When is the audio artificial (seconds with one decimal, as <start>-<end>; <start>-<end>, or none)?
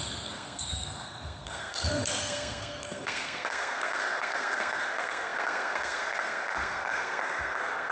0.0-7.9